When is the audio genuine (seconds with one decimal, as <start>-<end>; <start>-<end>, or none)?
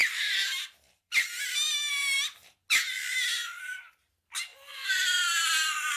2.5-6.0